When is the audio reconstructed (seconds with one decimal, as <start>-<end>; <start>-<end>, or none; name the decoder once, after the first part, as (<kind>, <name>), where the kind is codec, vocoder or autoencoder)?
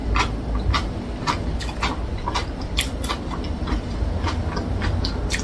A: none